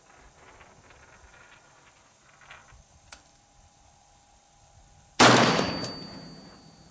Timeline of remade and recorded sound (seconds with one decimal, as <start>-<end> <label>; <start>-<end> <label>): 0.0-6.9 recorded